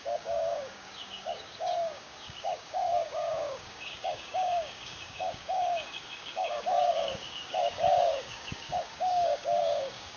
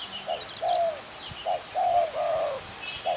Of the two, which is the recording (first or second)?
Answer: second